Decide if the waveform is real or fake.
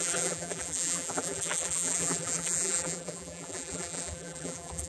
fake